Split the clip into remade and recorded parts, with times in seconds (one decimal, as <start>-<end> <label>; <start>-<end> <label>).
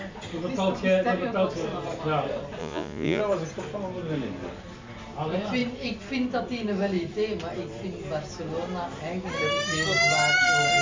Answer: 0.0-2.6 recorded; 2.6-3.2 remade; 3.2-10.8 recorded